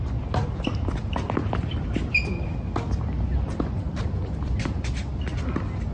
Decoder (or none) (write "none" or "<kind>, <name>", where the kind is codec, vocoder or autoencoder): none